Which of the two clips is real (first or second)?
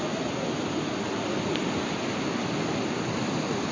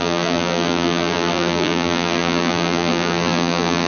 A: first